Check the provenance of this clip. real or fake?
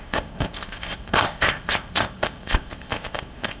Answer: fake